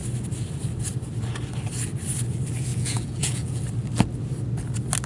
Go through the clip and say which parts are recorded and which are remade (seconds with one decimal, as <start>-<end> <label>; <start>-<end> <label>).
0.0-2.7 recorded; 2.7-3.6 remade; 3.6-5.1 recorded